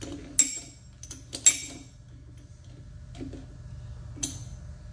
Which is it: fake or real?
real